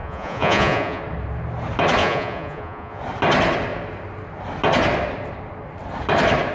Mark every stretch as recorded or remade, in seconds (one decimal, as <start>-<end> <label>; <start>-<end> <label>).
0.0-1.0 remade; 1.0-2.0 recorded; 2.0-3.0 remade; 3.0-6.5 recorded